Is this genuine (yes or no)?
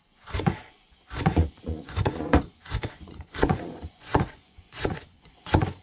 no